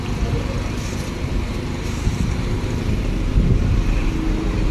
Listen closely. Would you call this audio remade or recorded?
remade